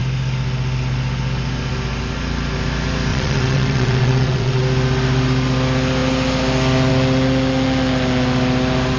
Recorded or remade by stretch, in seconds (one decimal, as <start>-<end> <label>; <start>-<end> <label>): 0.0-3.1 recorded; 3.1-4.6 remade; 4.6-9.0 recorded